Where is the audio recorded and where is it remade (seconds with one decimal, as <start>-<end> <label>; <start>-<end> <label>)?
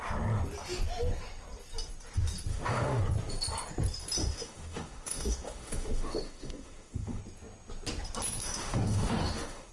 0.0-2.5 recorded; 2.5-3.0 remade; 3.0-4.2 recorded; 4.2-7.2 remade; 7.2-8.4 recorded; 8.4-9.7 remade